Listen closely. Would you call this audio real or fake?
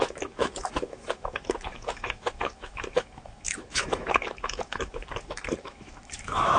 fake